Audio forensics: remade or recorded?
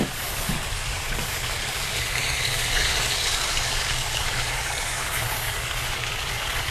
remade